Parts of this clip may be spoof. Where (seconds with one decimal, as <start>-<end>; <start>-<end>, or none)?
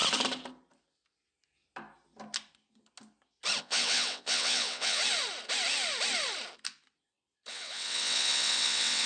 3.6-5.0; 7.5-9.1